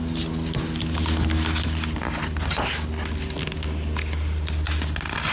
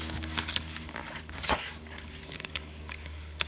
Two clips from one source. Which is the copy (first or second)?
second